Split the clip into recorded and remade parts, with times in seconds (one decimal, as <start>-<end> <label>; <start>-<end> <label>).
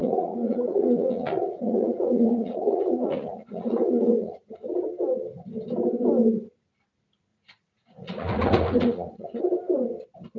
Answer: 0.0-4.5 remade; 4.5-7.3 recorded; 7.3-9.4 remade; 9.4-10.4 recorded